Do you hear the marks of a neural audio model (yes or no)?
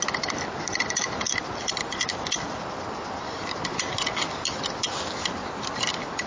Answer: no